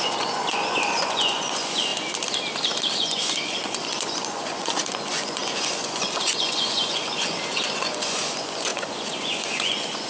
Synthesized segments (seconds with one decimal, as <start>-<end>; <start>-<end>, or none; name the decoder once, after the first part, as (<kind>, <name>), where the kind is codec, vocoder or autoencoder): 0.0-1.9 (vocoder, Vocos); 3.0-10.1